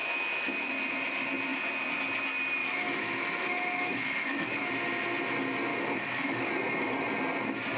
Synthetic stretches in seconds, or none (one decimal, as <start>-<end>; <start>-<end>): 0.0-0.7; 2.6-4.7; 5.7-6.5